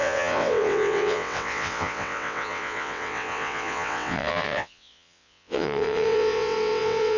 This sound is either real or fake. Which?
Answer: fake